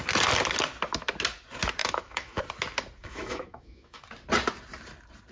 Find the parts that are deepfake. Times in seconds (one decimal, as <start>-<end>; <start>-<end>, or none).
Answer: 1.8-2.4; 3.0-4.0